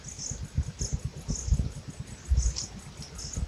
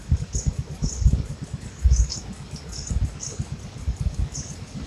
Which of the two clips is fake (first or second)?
second